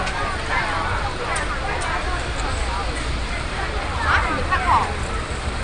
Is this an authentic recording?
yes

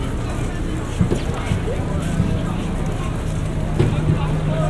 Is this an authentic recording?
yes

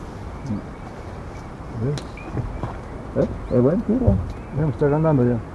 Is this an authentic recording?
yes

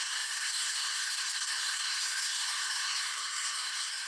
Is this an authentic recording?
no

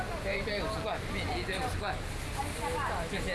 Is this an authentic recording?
yes